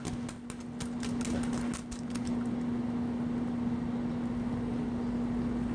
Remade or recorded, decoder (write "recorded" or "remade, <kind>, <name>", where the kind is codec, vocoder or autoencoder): recorded